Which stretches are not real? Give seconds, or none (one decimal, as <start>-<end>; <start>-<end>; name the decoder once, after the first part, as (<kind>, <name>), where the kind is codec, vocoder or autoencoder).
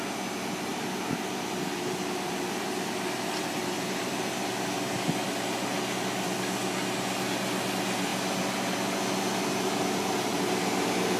0.7-4.5 (vocoder, BigVGAN v2)